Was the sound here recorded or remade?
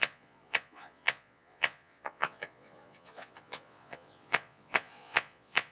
remade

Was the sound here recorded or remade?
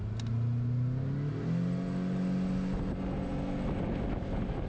recorded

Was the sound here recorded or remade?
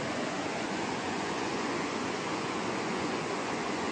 remade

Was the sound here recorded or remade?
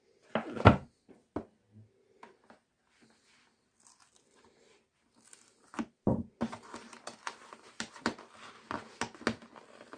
recorded